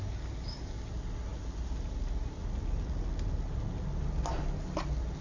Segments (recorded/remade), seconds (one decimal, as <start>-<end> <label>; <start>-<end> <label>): 0.0-5.2 recorded